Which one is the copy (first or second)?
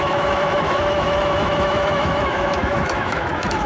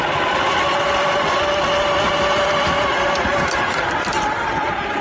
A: first